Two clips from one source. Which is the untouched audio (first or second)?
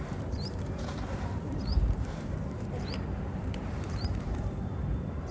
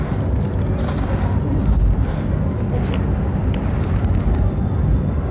second